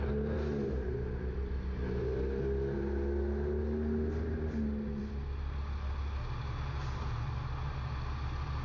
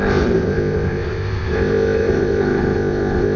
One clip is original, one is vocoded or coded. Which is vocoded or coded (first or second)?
second